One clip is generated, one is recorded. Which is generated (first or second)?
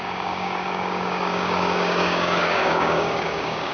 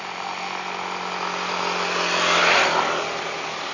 first